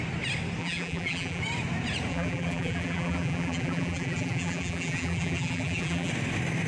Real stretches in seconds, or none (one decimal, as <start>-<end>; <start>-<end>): 0.0-0.6; 1.4-2.1; 6.1-6.7